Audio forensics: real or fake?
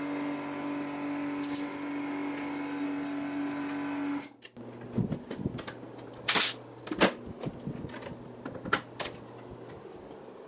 real